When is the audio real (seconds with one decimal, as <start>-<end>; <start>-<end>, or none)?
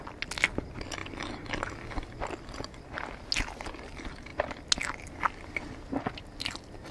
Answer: 0.0-6.9